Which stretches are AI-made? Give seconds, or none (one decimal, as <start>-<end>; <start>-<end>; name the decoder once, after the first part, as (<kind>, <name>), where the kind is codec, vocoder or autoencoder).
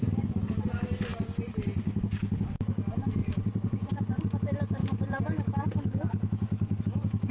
3.2-4.2 (vocoder, Vocos)